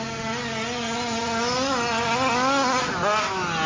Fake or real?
real